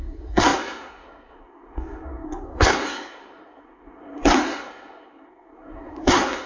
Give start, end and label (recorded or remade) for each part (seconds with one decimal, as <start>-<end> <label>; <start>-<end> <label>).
0.0-6.5 remade